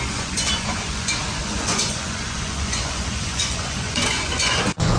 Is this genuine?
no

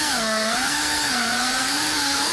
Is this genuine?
no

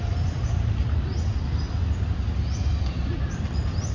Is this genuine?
no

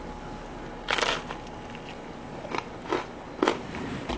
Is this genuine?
yes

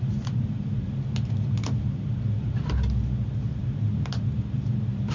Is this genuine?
yes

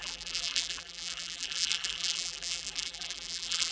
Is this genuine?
no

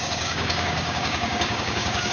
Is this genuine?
no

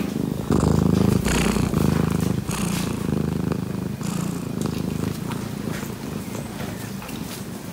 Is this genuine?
yes